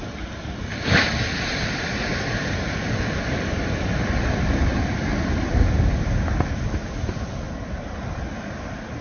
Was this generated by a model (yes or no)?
no